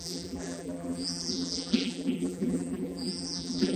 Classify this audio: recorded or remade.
remade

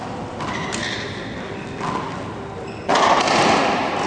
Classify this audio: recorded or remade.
recorded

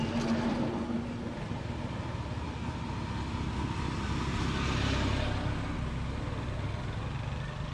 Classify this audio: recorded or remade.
recorded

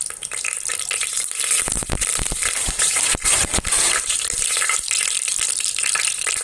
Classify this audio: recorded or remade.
remade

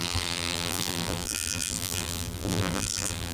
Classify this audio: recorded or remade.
remade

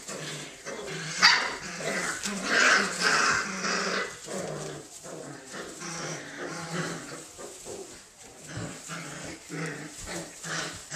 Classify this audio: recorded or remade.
remade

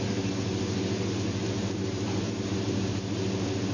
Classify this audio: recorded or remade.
recorded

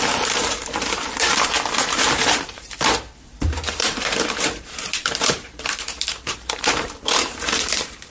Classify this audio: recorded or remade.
remade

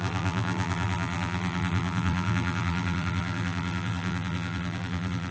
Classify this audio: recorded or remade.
remade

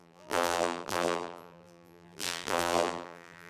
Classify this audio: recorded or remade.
remade